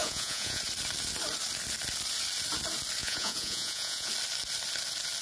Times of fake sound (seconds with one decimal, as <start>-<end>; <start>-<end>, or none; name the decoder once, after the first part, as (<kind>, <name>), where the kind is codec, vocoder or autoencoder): 0.0-0.6 (vocoder, Vocos); 3.0-4.1